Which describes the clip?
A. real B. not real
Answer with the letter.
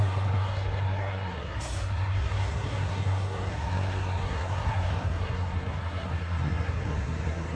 B